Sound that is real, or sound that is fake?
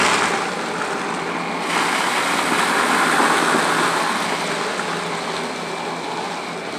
real